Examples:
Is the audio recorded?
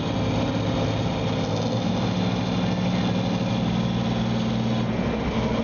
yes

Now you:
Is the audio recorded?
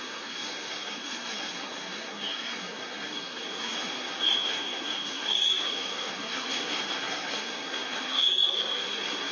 no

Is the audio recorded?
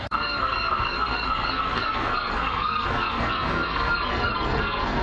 no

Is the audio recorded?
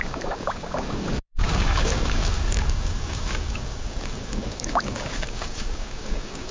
no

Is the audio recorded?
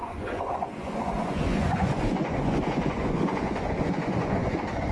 no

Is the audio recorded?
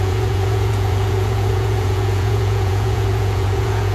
no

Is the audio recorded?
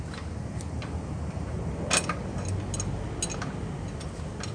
yes